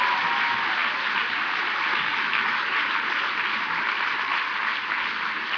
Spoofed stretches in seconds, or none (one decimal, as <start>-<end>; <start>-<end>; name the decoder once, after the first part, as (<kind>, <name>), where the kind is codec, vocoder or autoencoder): 1.9-2.8 (autoencoder, DAC-VAE)

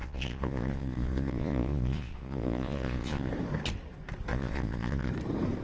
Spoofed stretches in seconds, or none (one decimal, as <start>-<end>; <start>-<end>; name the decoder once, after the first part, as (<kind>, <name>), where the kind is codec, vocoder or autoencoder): 0.0-3.3 (vocoder, Vocos); 4.3-5.1